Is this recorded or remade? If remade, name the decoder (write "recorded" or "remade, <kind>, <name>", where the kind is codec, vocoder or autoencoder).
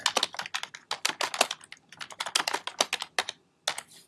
recorded